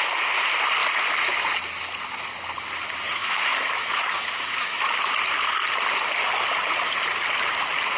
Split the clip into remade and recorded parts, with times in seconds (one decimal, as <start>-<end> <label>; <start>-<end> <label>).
0.0-3.2 recorded; 3.2-4.8 remade; 4.8-8.0 recorded